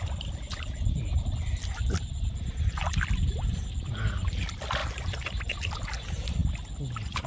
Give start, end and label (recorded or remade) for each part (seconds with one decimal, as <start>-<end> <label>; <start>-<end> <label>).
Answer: 0.0-7.3 recorded